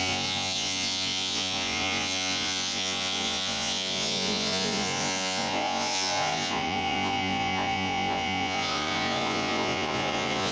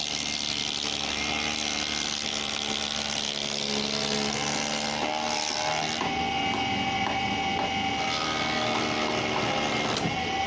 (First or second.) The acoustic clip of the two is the second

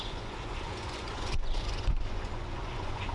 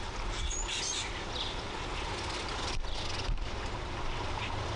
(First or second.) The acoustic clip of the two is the second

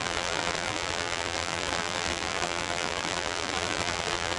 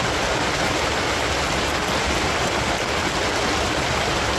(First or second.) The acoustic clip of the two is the second